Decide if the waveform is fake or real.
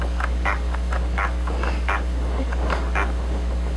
fake